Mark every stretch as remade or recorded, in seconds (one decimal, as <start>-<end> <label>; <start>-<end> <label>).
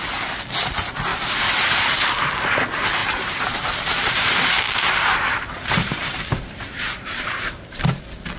0.0-1.1 recorded; 1.1-2.3 remade; 2.3-3.0 recorded; 3.0-8.0 remade; 8.0-8.4 recorded